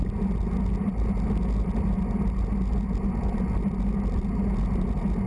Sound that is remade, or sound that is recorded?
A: recorded